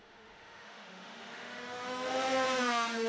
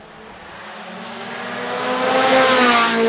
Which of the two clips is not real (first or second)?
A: first